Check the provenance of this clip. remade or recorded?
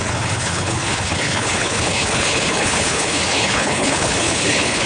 remade